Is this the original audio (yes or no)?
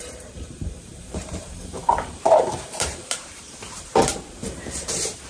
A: no